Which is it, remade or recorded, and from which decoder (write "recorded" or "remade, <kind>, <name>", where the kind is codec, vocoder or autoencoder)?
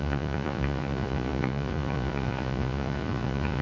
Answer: remade, vocoder, Vocos